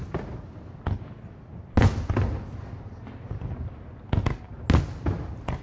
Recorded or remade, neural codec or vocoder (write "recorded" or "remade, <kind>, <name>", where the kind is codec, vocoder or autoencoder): recorded